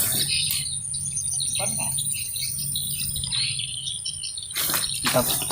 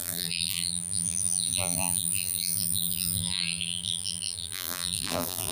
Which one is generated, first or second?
second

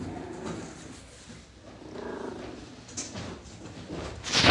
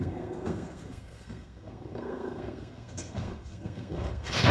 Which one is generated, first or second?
second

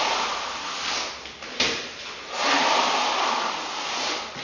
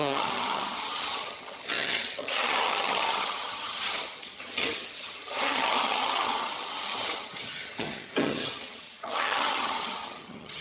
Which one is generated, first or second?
second